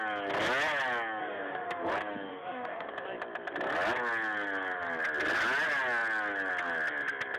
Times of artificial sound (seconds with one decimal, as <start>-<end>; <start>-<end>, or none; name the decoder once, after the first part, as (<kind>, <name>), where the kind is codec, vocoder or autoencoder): 1.2-1.9 (autoencoder, DAC-VAE); 2.3-2.9